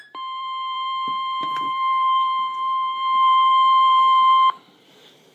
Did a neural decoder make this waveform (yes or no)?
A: yes